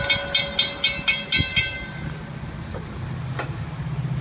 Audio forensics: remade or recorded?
recorded